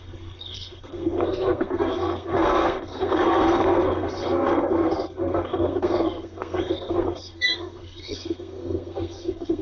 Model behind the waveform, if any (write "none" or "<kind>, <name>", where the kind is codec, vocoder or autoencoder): codec, SNAC